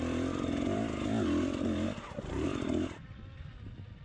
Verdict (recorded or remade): remade